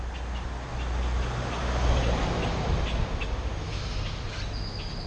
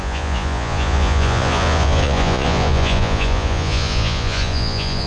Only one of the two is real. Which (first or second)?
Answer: first